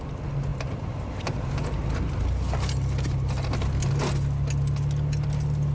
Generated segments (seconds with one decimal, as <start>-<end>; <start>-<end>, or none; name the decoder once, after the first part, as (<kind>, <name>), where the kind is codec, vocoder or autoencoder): none